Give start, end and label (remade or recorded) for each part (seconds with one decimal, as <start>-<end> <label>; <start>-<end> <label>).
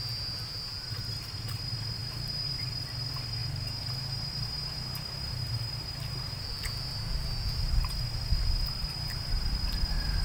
0.0-10.2 recorded